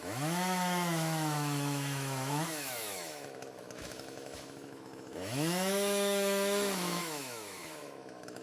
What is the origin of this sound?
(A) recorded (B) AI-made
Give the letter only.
B